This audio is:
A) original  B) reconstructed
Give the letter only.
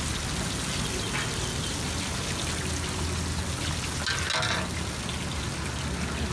A